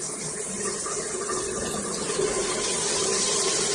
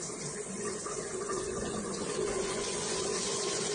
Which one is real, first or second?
first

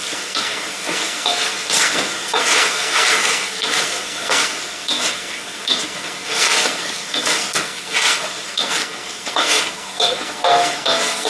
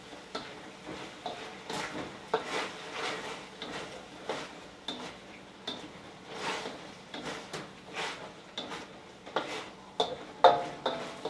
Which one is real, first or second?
second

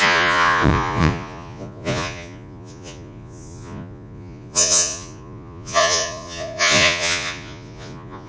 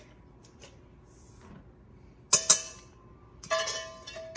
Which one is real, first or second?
second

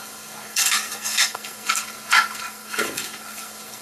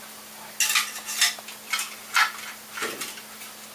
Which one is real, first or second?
second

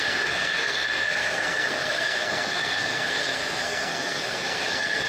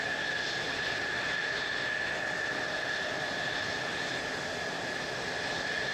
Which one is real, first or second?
second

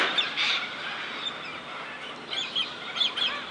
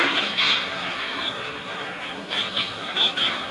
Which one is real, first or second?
first